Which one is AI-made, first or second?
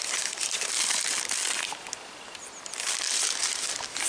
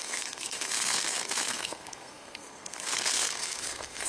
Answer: second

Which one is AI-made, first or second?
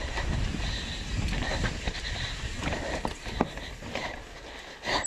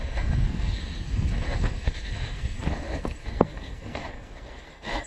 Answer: second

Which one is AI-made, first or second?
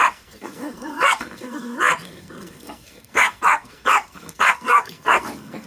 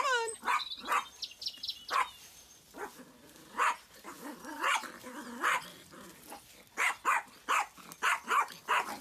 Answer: first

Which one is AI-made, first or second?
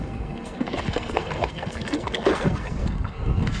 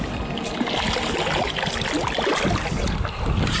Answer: first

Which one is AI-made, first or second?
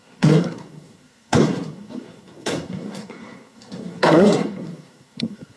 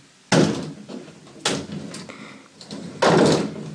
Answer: first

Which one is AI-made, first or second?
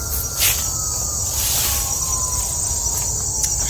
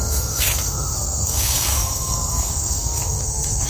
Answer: second